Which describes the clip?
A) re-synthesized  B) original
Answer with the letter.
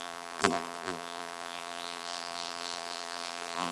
A